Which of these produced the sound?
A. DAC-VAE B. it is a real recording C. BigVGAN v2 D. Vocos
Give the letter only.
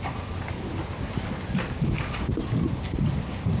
B